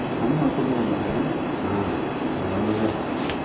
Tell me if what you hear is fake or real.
real